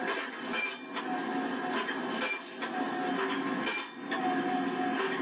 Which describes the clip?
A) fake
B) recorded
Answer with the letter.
B